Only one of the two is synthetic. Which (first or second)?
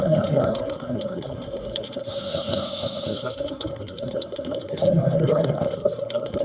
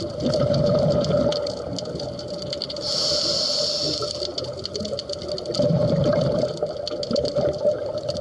first